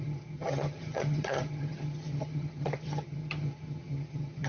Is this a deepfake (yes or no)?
yes